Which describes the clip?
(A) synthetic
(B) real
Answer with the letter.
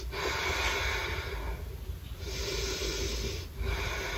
B